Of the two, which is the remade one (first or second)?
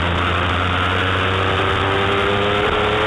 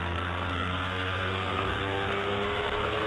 second